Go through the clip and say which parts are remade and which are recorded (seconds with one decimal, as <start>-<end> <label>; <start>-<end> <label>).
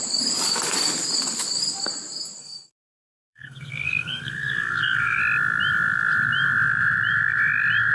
0.0-2.4 recorded; 2.4-5.2 remade; 5.2-7.9 recorded